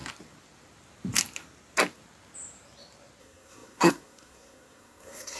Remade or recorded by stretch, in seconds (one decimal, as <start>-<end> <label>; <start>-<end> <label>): 0.0-3.2 recorded; 3.2-5.4 remade